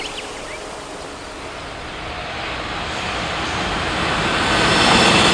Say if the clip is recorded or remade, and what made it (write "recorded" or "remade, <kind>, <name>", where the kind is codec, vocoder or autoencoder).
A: recorded